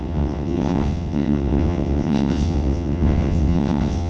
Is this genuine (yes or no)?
no